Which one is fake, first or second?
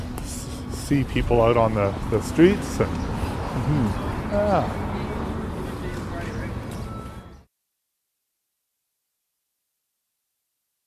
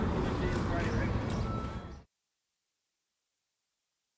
second